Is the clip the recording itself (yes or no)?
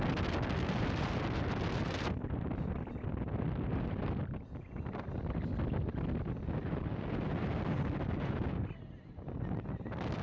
yes